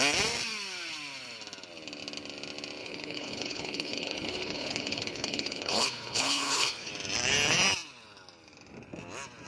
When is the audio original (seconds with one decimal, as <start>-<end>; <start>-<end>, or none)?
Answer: 0.0-2.8; 6.9-9.5